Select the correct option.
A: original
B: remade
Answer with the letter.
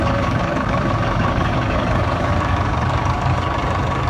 B